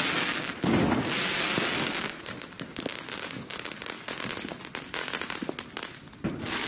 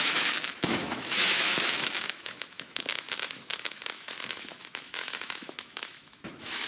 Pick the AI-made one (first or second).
second